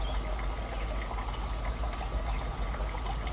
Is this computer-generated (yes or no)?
no